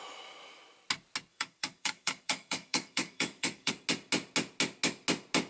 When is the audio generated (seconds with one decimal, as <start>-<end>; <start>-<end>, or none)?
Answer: 1.3-3.7